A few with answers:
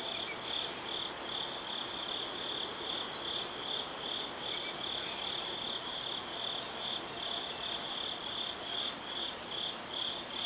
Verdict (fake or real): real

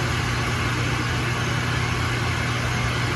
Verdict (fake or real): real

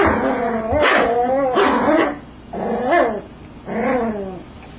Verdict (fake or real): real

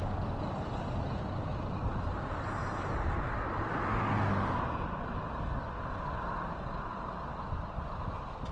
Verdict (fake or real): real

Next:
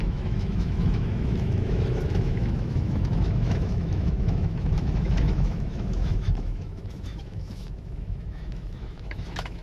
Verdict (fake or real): fake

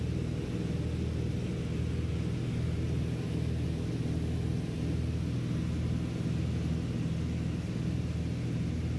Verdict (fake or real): real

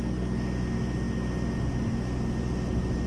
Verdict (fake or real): real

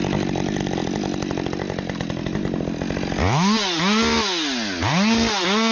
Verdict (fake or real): real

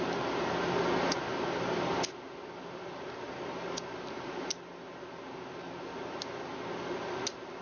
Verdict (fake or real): real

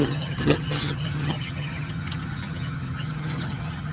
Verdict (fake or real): fake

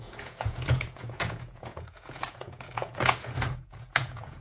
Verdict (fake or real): fake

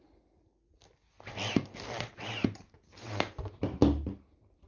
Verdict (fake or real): real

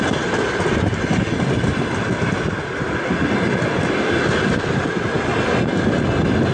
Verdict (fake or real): real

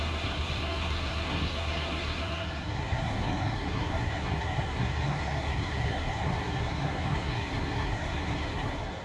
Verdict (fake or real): fake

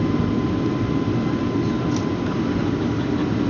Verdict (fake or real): real